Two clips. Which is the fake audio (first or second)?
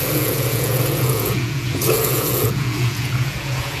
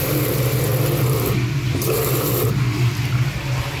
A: first